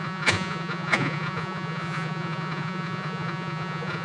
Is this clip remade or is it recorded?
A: remade